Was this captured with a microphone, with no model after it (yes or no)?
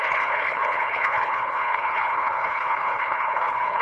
no